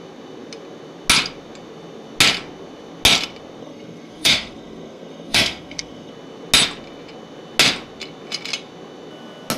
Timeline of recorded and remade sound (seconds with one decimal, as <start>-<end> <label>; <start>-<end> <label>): 0.0-3.6 recorded; 3.6-6.1 remade; 6.1-9.6 recorded